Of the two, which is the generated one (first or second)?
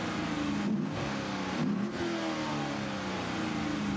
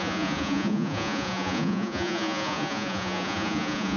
second